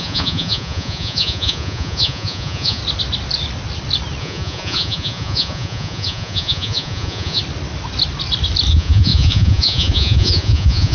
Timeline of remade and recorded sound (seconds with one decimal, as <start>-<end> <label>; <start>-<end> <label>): 0.0-2.8 remade; 2.8-4.2 recorded; 4.2-7.4 remade; 7.4-8.7 recorded; 8.7-10.9 remade